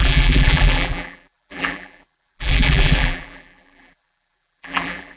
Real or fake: fake